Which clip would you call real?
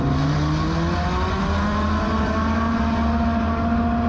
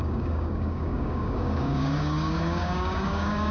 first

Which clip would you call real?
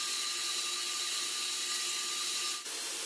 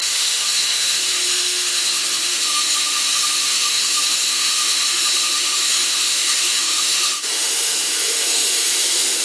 first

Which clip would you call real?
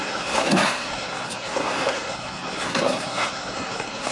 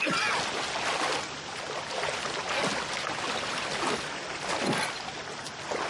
second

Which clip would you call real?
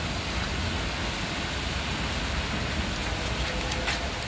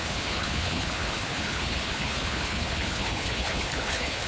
first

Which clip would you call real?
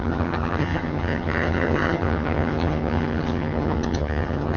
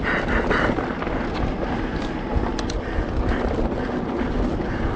second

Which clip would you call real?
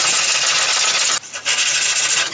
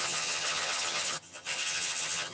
first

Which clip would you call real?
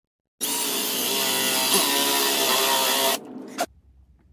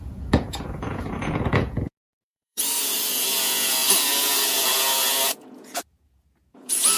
first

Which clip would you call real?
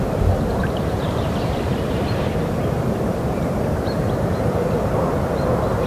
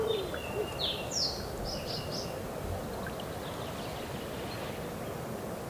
second